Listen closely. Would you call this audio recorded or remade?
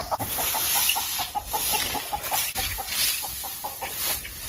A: recorded